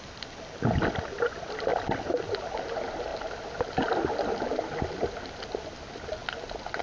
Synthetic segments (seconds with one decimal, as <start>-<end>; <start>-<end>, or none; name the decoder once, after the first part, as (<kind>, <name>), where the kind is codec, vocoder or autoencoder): none